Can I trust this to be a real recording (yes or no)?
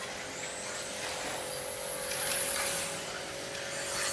yes